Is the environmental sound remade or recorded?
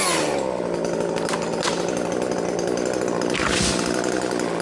recorded